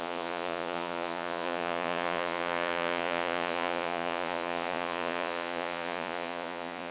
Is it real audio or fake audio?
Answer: fake